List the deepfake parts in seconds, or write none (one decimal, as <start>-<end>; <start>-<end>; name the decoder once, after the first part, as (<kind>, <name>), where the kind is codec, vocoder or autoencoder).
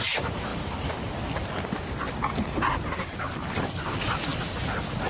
none